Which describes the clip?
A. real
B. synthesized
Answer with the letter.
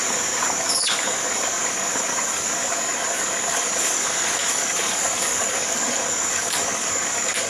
B